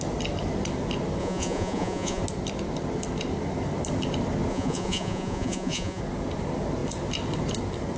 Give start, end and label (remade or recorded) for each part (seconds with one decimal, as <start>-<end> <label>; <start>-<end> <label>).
0.0-1.2 recorded; 1.2-2.2 remade; 2.2-4.5 recorded; 4.5-6.0 remade; 6.0-8.0 recorded